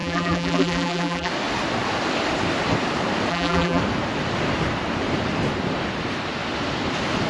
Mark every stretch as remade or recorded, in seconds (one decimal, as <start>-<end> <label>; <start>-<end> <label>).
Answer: 0.0-1.3 remade; 1.3-3.3 recorded; 3.3-3.8 remade; 3.8-7.3 recorded